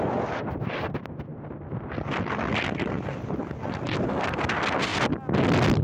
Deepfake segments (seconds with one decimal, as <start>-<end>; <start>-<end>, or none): none